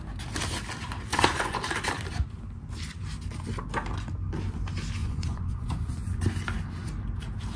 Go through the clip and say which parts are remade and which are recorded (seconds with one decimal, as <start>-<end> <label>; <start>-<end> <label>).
0.0-1.1 recorded; 1.1-1.6 remade; 1.6-5.0 recorded; 5.0-6.2 remade; 6.2-7.6 recorded